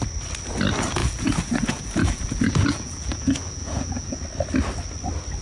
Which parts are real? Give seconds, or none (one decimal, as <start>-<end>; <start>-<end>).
0.0-1.0; 4.2-5.4